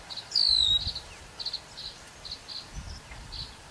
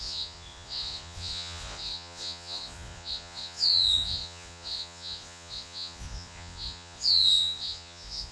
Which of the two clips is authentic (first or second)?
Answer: first